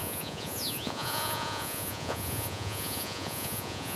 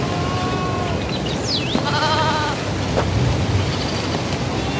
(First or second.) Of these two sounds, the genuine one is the second